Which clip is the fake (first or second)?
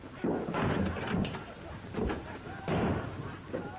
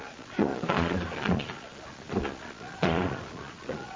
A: second